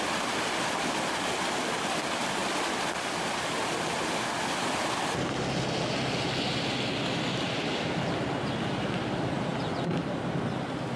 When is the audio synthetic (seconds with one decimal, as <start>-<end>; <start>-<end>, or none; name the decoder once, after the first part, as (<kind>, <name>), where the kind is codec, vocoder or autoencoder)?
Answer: none